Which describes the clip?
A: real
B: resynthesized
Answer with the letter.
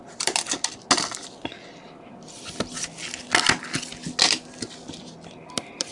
A